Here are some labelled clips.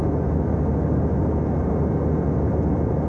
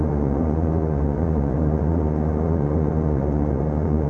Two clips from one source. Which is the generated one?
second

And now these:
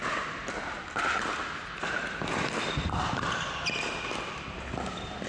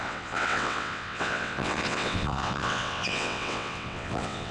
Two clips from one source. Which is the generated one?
second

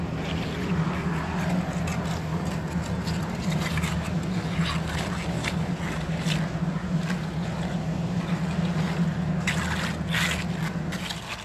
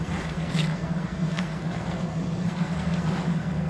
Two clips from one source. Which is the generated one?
second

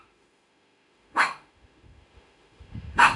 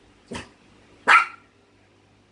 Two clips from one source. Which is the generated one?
first